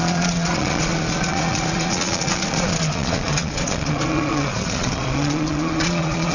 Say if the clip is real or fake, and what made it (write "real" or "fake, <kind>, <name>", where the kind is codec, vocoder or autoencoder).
fake, vocoder, Vocos